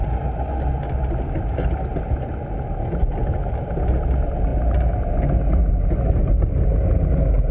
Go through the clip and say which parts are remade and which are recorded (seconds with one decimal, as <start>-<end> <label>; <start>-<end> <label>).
0.0-7.5 recorded